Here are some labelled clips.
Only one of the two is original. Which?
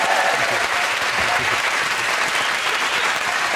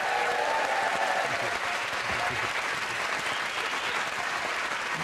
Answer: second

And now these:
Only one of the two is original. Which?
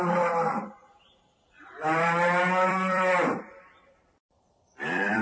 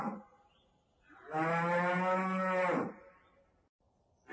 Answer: second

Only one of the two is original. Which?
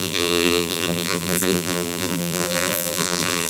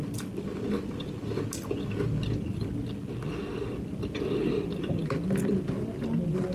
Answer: second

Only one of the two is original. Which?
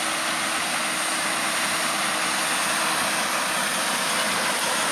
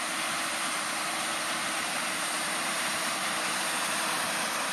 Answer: first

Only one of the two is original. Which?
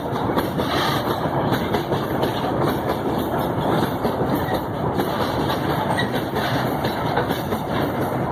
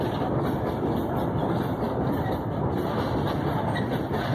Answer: second